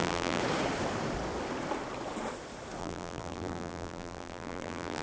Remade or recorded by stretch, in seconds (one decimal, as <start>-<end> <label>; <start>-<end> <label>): 0.0-0.4 remade; 0.4-2.8 recorded; 2.8-5.0 remade